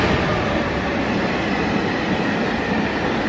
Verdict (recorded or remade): recorded